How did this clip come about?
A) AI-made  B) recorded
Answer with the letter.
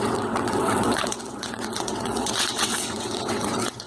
A